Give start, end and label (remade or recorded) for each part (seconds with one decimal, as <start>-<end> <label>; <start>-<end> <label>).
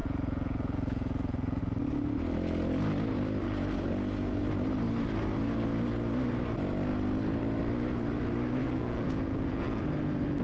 0.0-1.6 remade; 1.6-8.6 recorded; 8.6-9.8 remade; 9.8-10.4 recorded